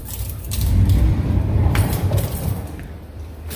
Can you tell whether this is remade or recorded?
remade